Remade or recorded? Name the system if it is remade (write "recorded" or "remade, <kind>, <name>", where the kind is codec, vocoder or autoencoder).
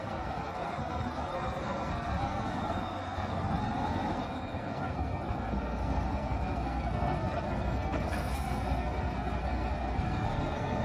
remade, codec, SNAC